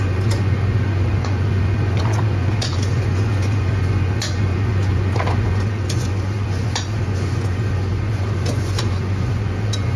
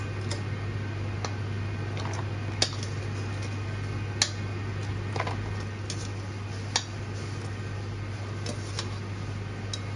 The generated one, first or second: first